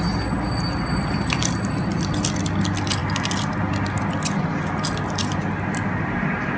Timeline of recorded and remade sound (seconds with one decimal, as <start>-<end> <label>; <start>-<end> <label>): 0.0-6.6 recorded